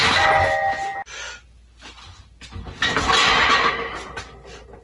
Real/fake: real